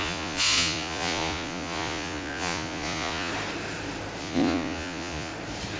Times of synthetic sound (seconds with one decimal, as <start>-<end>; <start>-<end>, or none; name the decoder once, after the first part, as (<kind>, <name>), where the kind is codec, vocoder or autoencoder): 0.0-3.3 (vocoder, Vocos); 4.2-5.3